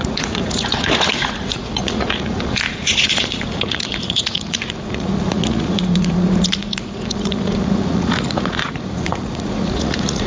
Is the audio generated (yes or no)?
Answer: yes